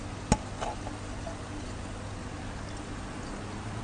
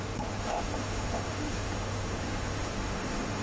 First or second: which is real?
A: first